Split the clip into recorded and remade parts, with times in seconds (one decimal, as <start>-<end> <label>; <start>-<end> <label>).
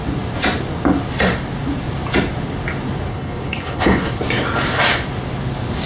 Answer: 0.0-3.1 recorded; 3.1-4.2 remade; 4.2-5.9 recorded